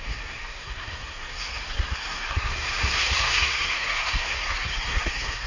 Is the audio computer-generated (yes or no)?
yes